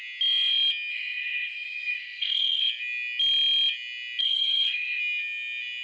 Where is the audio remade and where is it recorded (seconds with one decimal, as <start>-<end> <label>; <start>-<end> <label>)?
0.0-0.9 recorded; 0.9-2.6 remade; 2.6-4.2 recorded; 4.2-5.0 remade; 5.0-5.8 recorded